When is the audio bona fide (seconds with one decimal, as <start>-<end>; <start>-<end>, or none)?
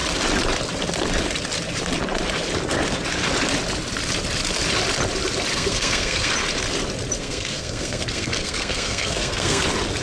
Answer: 0.0-5.5; 6.3-7.2; 9.6-10.0